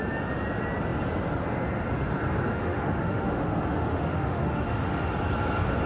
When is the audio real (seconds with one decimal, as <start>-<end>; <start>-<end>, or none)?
0.0-2.5; 5.1-5.9